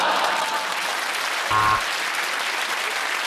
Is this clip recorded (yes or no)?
yes